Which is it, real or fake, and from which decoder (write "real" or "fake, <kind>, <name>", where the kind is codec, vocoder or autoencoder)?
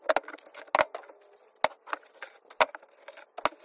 real